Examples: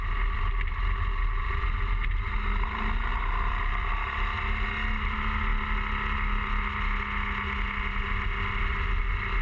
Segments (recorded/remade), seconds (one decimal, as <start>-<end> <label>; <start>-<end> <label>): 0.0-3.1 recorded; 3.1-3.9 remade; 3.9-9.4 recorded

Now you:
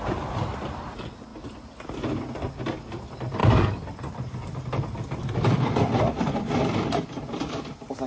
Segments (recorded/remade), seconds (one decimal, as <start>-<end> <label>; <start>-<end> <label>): 0.0-1.3 recorded; 1.3-2.6 remade; 2.6-3.4 recorded; 3.4-7.6 remade; 7.6-8.1 recorded

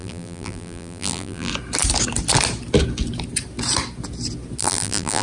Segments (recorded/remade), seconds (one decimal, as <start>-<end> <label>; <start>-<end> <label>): 0.0-1.5 remade; 1.5-4.6 recorded; 4.6-5.2 remade

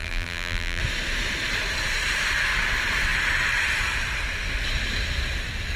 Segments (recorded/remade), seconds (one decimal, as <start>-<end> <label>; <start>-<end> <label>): 0.0-0.8 remade; 0.8-5.8 recorded

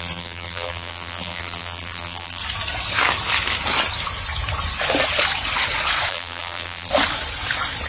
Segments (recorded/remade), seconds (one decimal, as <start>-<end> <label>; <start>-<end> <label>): 0.0-2.4 remade; 2.4-6.1 recorded; 6.1-6.9 remade; 6.9-7.9 recorded